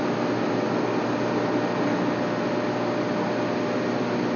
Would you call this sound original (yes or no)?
yes